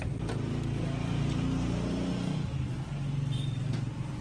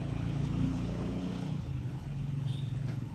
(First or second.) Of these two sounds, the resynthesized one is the second